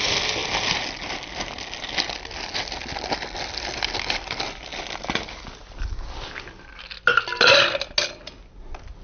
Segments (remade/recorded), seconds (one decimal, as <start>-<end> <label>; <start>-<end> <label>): 0.0-9.0 recorded